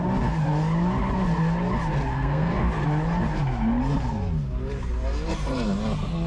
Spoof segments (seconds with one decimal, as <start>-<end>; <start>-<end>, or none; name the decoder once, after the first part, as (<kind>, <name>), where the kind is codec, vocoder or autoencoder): 2.1-2.7 (codec, SNAC)